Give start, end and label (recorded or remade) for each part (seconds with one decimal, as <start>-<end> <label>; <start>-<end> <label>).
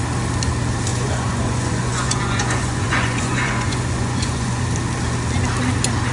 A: 0.0-0.9 recorded; 0.9-4.6 remade; 4.6-6.1 recorded